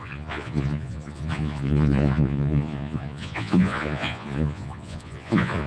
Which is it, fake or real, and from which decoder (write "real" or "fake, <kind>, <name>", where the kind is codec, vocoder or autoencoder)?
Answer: fake, vocoder, Vocos